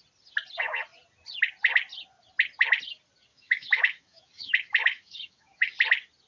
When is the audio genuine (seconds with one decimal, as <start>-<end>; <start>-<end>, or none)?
0.0-3.3; 5.8-6.3